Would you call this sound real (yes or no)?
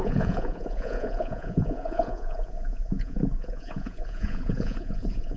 no